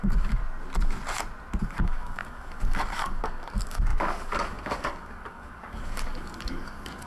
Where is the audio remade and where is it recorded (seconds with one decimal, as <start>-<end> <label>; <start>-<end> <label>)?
0.0-0.4 remade; 0.4-1.6 recorded; 1.6-7.1 remade